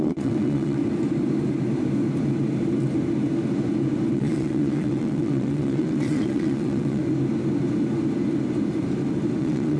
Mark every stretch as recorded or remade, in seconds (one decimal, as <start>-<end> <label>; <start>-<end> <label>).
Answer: 0.0-0.8 remade; 0.8-4.1 recorded; 4.1-7.0 remade; 7.0-9.4 recorded; 9.4-9.8 remade